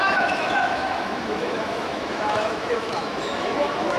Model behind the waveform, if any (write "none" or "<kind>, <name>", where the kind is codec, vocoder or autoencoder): autoencoder, DAC-VAE